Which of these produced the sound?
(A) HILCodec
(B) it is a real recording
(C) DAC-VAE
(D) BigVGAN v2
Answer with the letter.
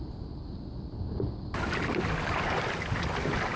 B